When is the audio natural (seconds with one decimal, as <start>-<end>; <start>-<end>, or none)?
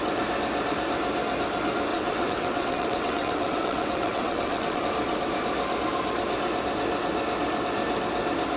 0.0-1.9; 4.8-8.6